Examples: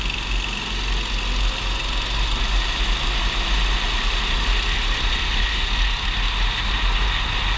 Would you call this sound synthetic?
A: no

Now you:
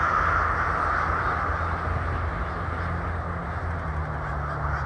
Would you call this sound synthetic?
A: no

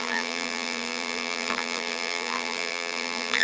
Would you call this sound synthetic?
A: yes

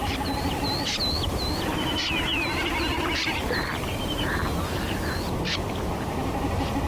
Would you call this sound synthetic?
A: no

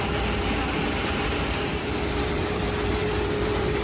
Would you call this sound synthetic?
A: yes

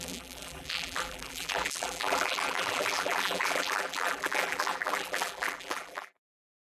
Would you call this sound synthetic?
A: yes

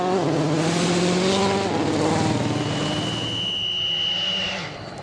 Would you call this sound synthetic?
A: no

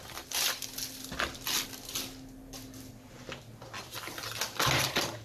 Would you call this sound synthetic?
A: no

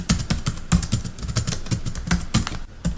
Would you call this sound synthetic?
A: no